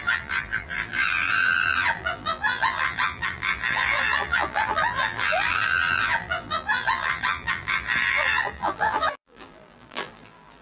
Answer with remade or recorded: remade